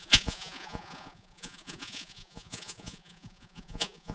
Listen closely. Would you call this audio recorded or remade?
remade